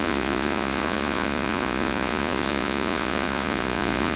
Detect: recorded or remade remade